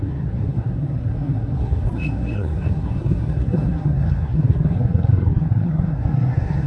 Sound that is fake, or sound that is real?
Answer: fake